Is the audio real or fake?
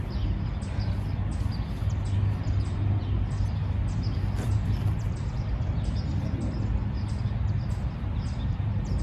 real